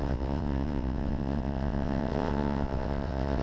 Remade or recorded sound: remade